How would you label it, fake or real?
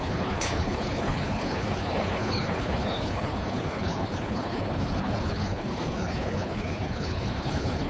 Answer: fake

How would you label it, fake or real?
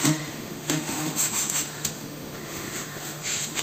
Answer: fake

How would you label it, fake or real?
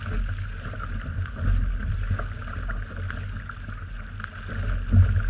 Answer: real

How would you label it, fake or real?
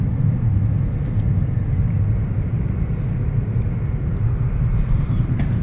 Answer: real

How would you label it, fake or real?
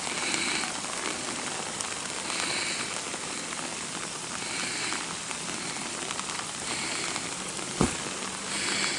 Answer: real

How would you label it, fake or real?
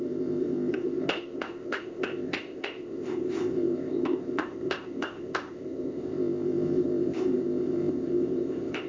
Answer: fake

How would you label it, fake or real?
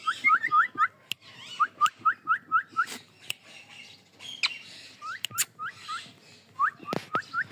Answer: real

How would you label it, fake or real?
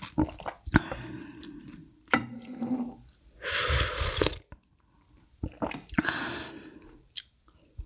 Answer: real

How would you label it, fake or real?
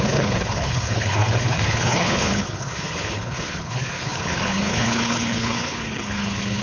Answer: fake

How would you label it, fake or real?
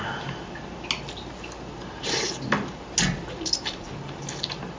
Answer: real